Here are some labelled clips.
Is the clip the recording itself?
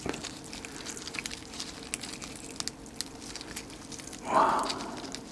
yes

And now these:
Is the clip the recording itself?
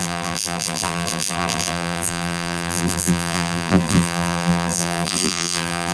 no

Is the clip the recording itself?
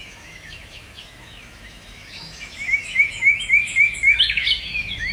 no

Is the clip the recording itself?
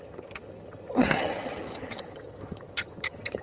no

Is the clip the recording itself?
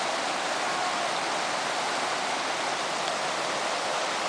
yes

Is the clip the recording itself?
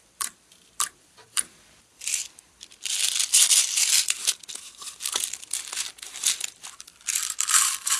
no